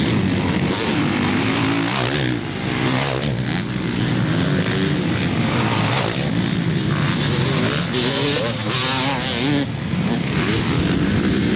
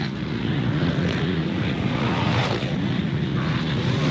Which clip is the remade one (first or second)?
second